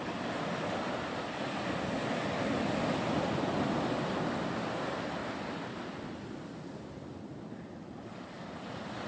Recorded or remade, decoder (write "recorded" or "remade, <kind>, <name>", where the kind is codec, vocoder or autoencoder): recorded